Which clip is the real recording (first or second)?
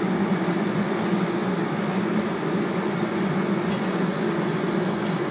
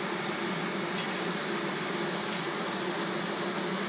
second